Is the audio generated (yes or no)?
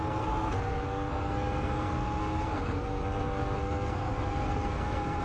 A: yes